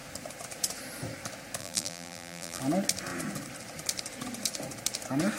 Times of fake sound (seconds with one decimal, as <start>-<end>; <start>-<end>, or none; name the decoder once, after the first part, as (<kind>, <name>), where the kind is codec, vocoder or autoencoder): 1.6-2.6 (vocoder, BigVGAN v2)